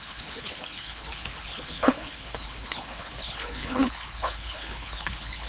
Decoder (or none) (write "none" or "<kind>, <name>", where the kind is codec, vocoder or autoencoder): codec, HILCodec